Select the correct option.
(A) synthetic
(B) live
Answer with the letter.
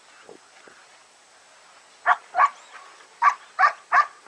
B